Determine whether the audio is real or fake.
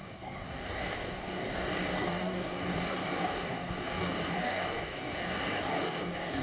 fake